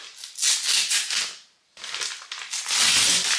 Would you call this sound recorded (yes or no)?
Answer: yes